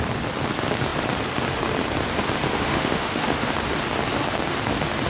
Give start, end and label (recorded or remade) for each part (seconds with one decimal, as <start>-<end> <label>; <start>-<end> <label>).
0.0-2.5 recorded; 2.5-3.5 remade; 3.5-5.1 recorded